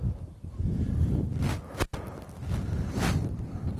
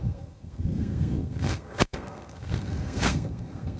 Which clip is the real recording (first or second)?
first